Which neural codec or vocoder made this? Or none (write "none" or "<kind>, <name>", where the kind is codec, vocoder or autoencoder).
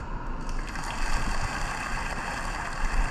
none